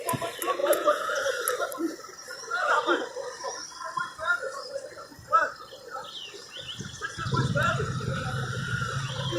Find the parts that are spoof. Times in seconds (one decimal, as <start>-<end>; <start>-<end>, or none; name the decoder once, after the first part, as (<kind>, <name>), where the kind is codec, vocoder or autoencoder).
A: 0.6-1.1 (vocoder, Vocos)